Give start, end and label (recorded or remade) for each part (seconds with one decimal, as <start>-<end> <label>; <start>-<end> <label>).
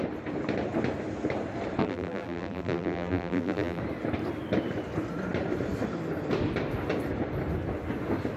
0.0-1.8 recorded; 1.8-3.8 remade; 3.8-8.4 recorded